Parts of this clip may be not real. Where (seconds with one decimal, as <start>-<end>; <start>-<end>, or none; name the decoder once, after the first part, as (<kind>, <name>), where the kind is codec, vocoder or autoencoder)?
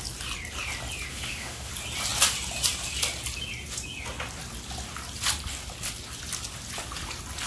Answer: 1.1-1.7 (autoencoder, DAC-VAE)